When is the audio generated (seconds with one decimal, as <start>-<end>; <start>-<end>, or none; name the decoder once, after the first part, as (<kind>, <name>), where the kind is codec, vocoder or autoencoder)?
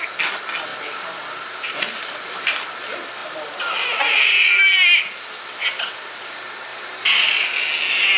0.7-2.2 (vocoder, BigVGAN v2); 5.6-6.3; 6.7-7.4